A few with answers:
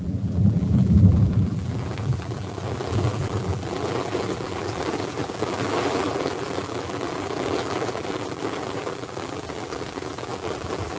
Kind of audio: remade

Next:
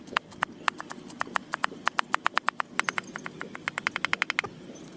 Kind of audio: recorded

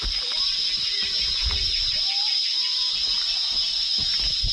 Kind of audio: recorded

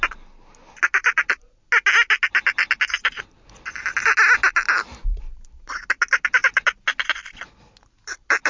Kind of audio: recorded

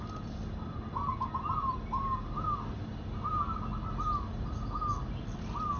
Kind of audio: recorded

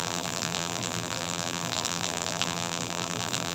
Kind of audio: remade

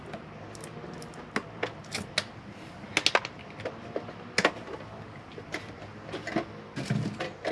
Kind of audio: recorded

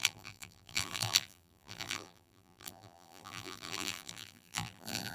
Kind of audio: remade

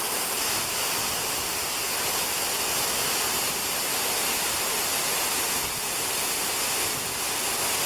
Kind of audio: recorded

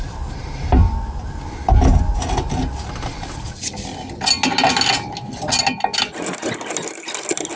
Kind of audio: recorded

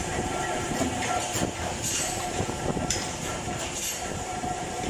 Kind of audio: remade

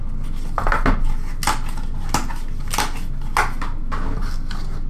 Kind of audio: recorded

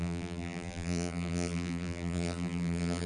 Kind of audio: remade